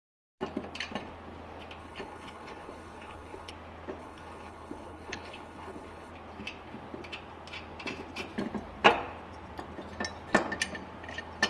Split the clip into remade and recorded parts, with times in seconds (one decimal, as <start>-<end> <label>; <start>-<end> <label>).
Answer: 0.0-1.8 recorded; 1.8-3.5 remade; 3.5-4.0 recorded; 4.0-6.1 remade; 6.1-11.5 recorded